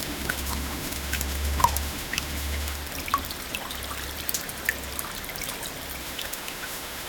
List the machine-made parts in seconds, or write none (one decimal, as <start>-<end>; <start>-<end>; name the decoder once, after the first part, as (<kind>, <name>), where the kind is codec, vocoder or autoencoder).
0.0-2.8 (autoencoder, DAC-VAE); 6.0-7.1